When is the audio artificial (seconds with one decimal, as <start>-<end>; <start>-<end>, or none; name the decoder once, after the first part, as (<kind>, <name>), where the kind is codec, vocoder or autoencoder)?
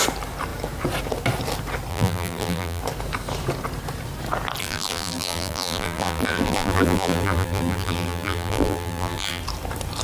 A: 1.9-2.8 (vocoder, BigVGAN v2); 4.6-9.4